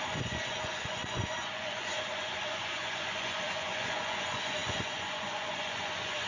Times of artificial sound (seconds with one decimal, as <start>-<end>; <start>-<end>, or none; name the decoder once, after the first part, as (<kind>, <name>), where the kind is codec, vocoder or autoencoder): 0.0-6.3 (vocoder, Vocos)